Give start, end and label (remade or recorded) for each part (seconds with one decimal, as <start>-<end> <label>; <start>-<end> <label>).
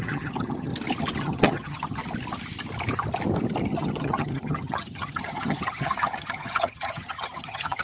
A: 0.0-0.7 remade; 0.7-1.2 recorded; 1.2-2.0 remade; 2.0-3.7 recorded; 3.7-7.8 remade